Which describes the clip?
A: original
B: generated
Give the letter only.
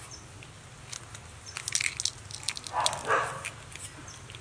A